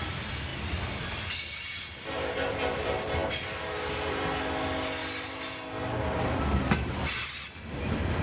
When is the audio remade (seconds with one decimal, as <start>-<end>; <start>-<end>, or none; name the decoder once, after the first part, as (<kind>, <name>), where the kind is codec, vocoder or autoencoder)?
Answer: none